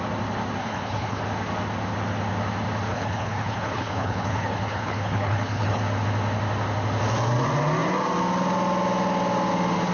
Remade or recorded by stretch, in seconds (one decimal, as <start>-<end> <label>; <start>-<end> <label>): 0.0-0.6 recorded; 0.6-1.2 remade; 1.2-2.9 recorded; 2.9-5.8 remade; 5.8-9.9 recorded